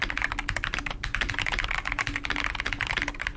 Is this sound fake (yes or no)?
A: no